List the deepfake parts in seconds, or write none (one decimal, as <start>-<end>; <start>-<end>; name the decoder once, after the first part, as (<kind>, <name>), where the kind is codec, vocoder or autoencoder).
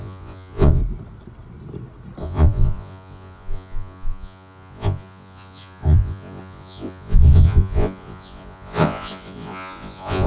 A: 0.0-0.8 (vocoder, Vocos); 2.2-10.3